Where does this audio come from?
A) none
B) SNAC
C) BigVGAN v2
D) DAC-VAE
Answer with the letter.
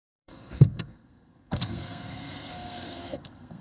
B